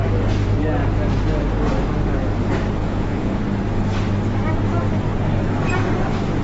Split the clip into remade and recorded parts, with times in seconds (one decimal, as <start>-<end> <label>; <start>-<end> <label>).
0.0-2.8 recorded; 2.8-3.4 remade; 3.4-6.4 recorded